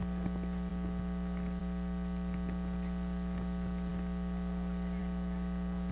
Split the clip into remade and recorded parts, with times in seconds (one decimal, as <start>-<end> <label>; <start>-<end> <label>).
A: 0.0-5.9 recorded